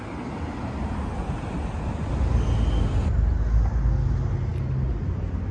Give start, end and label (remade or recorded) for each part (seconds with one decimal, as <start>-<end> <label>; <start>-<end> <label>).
0.0-5.5 recorded